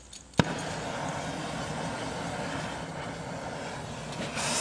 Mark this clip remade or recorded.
recorded